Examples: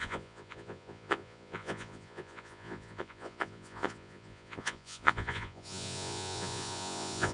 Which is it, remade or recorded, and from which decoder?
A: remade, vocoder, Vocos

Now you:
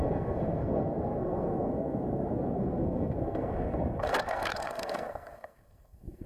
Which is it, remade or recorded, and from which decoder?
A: remade, codec, SNAC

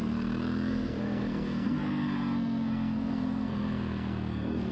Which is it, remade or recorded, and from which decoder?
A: remade, codec, SNAC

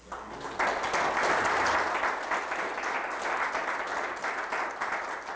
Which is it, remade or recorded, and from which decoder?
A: recorded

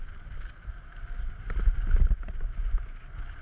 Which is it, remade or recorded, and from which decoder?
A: recorded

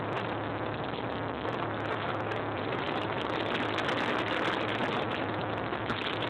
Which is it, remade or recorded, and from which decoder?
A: recorded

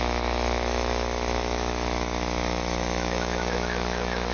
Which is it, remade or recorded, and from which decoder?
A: remade, autoencoder, DAC-VAE